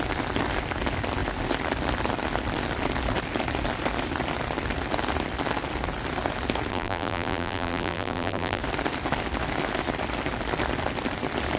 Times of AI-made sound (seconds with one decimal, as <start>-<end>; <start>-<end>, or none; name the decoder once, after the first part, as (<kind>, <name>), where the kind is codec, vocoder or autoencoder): 6.7-8.6 (vocoder, BigVGAN v2)